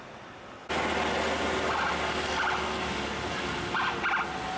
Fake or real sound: real